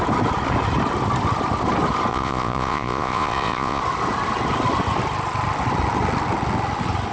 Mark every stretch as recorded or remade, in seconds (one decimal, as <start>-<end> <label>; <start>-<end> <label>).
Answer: 0.0-2.1 recorded; 2.1-3.8 remade; 3.8-7.1 recorded